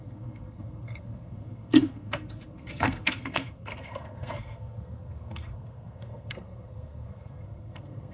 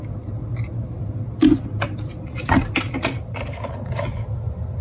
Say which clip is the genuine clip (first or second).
second